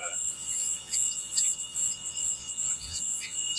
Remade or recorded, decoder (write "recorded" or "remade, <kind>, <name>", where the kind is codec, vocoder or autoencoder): remade, vocoder, Vocos